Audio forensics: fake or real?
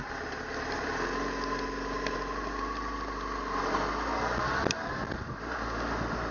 real